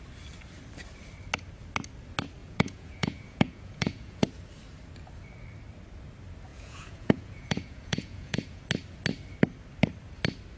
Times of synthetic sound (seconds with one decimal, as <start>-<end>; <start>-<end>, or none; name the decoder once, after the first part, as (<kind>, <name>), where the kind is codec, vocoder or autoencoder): 2.4-4.3 (vocoder, Vocos); 6.5-8.6